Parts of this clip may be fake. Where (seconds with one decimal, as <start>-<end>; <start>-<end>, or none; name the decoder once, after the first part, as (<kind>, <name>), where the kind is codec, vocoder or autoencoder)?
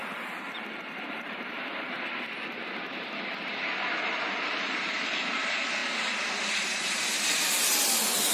0.0-1.7 (vocoder, BigVGAN v2); 2.9-5.8; 6.5-8.3